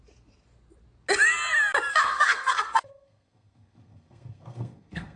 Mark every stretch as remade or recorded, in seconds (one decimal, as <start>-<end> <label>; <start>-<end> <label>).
0.0-1.9 recorded; 1.9-5.2 remade